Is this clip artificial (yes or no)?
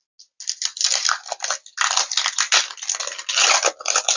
no